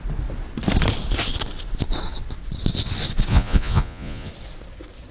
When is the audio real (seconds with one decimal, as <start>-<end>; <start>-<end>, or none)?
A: 0.0-3.3; 4.3-5.1